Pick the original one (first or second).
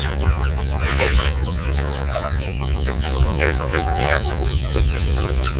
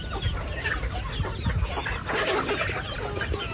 second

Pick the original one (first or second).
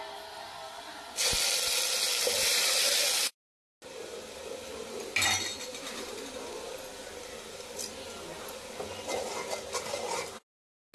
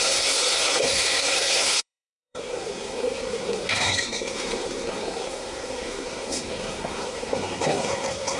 first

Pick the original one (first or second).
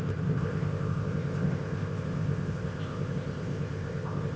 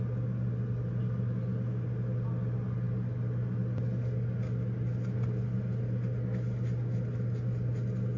second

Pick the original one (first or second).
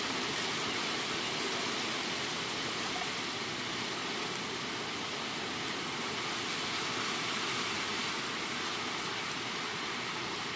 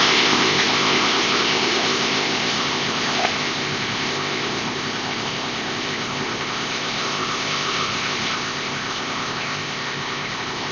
first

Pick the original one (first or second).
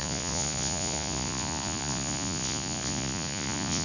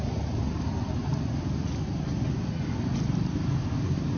second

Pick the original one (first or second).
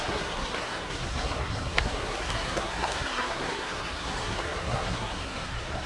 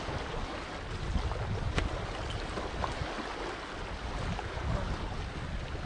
second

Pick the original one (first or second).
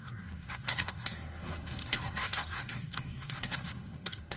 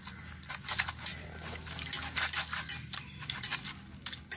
second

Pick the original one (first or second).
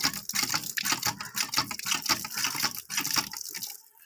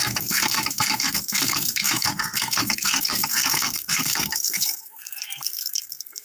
first